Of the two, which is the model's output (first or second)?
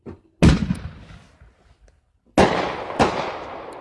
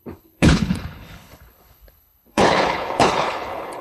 second